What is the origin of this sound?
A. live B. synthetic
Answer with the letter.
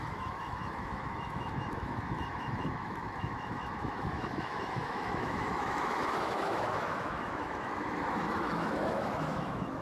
B